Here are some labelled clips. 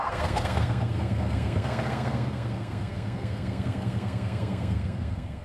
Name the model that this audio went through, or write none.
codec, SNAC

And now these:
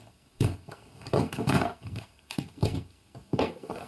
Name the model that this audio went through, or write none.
codec, SNAC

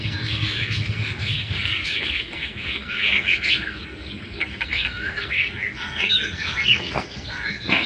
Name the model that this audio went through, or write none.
codec, SNAC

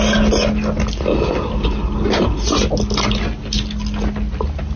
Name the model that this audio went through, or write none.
none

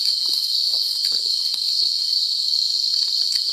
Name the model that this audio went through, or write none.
codec, SNAC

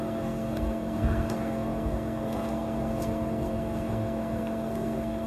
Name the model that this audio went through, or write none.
codec, SNAC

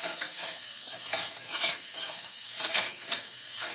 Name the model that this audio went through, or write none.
codec, SNAC